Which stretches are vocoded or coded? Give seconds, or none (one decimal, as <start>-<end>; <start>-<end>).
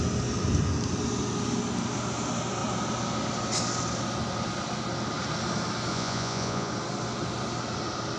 5.9-6.7